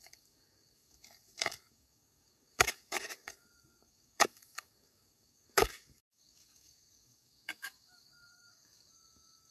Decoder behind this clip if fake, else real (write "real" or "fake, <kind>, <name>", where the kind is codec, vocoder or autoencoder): fake, codec, DAC